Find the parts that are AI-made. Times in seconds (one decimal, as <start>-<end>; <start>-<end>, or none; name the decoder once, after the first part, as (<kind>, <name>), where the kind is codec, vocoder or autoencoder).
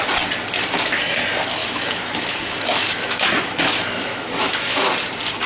1.6-4.9 (autoencoder, DAC-VAE)